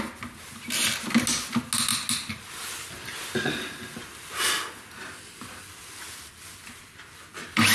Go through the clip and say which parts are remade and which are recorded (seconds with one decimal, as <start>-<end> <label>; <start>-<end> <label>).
0.0-7.7 recorded